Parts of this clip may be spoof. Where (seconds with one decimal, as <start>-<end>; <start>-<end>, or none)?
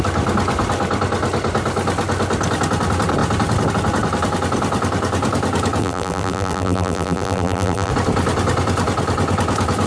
5.8-7.9